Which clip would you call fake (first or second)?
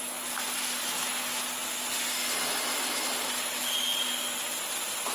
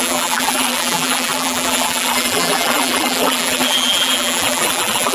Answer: second